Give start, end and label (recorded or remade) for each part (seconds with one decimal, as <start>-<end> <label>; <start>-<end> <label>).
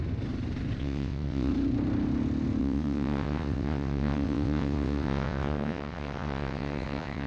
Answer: 0.0-0.8 recorded; 0.8-1.5 remade; 1.5-2.6 recorded; 2.6-7.3 remade